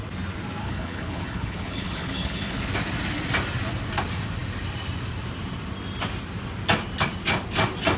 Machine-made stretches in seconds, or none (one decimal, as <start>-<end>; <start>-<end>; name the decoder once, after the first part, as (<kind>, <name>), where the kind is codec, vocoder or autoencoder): 0.6-2.6 (codec, HILCodec)